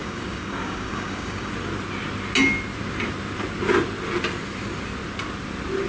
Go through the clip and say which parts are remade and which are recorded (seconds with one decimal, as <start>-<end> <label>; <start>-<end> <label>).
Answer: 0.0-1.5 remade; 1.5-5.9 recorded

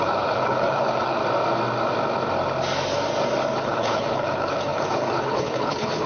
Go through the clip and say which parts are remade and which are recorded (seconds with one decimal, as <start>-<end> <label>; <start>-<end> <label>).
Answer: 0.0-1.2 remade; 1.2-3.6 recorded; 3.6-6.1 remade

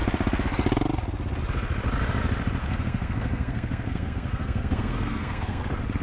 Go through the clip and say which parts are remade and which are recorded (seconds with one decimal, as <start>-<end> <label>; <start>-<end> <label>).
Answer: 0.0-2.6 recorded; 2.6-5.6 remade; 5.6-6.0 recorded

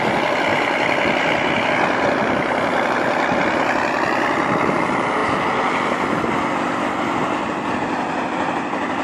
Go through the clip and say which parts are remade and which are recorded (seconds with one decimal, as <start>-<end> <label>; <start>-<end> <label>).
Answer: 0.0-9.0 recorded

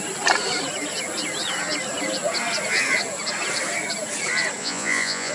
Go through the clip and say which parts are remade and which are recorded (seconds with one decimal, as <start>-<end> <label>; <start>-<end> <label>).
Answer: 0.0-4.6 recorded; 4.6-5.3 remade

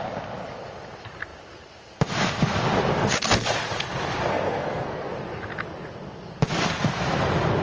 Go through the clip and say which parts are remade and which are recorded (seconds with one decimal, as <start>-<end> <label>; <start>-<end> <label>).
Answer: 0.0-4.3 recorded; 4.3-5.1 remade; 5.1-7.6 recorded